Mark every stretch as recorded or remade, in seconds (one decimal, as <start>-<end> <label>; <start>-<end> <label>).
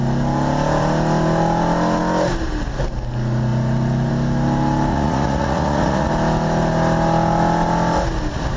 0.0-4.9 recorded; 4.9-6.1 remade; 6.1-8.6 recorded